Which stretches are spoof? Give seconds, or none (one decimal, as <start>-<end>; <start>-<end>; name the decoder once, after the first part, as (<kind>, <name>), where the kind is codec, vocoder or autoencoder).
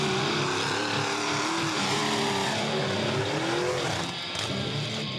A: none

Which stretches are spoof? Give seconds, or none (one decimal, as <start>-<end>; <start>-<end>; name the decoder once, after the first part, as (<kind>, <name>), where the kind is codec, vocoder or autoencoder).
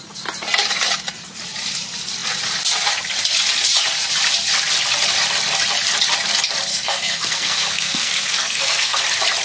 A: 6.7-9.0 (codec, SNAC)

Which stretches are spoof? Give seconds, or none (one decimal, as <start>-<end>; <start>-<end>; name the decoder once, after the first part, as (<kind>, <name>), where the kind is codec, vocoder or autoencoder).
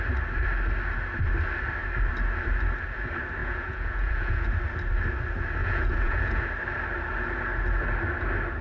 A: 3.4-4.5 (vocoder, Vocos); 5.6-6.4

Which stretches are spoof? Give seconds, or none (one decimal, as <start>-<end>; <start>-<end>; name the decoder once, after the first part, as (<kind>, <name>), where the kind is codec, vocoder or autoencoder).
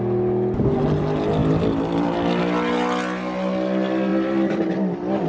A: 1.4-2.4 (vocoder, BigVGAN v2); 4.1-5.3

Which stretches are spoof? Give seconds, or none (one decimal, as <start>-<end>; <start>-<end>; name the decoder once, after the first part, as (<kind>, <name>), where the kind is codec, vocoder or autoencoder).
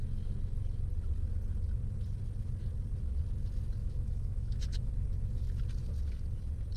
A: 3.8-4.9 (autoencoder, DAC-VAE)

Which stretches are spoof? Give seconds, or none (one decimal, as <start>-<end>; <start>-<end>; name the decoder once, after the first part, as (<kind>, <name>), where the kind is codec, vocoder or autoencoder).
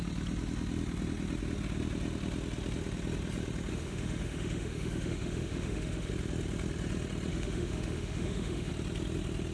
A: 3.7-6.1 (autoencoder, DAC-VAE); 7.3-8.7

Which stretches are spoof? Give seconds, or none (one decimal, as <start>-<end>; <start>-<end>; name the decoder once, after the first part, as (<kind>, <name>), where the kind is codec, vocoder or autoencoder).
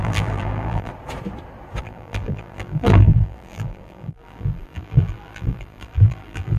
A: 0.0-0.9 (vocoder, BigVGAN v2); 1.8-6.6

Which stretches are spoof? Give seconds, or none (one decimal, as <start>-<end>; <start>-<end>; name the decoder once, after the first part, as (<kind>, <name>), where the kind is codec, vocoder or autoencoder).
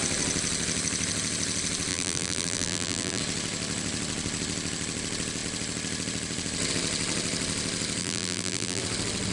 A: 1.9-3.2 (vocoder, BigVGAN v2); 8.0-8.8